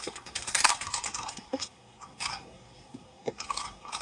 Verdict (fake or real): fake